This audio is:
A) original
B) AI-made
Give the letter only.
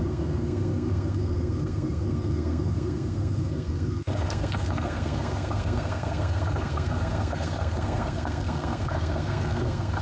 B